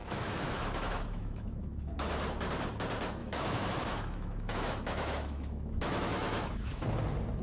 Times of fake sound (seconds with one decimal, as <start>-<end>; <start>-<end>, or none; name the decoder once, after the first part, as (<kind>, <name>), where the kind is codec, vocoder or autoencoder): 0.0-2.1 (autoencoder, DAC-VAE); 3.2-6.8